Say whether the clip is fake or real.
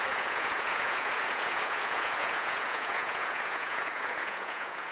fake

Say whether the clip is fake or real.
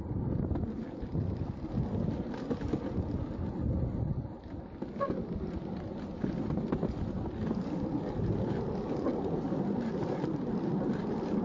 real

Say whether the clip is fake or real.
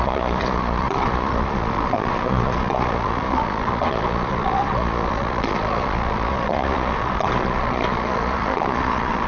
fake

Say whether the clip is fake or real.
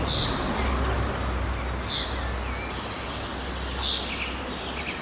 real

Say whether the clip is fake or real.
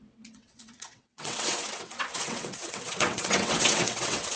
fake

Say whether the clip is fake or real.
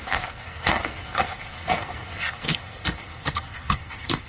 fake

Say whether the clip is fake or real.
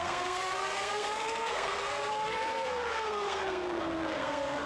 fake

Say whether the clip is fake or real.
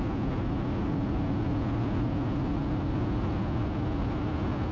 real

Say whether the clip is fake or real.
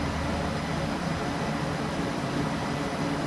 real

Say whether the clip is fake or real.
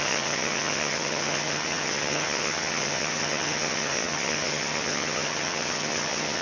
fake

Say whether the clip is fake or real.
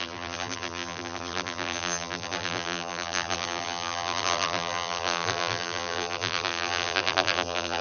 fake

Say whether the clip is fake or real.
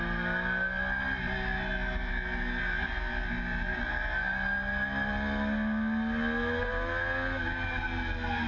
real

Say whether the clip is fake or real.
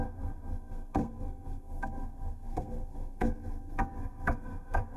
fake